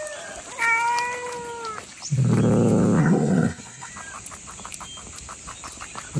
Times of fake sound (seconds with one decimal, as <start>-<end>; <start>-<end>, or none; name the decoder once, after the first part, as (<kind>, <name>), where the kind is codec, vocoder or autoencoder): 3.0-3.9 (codec, SNAC)